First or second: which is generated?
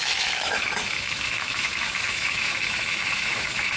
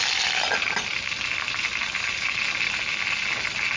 first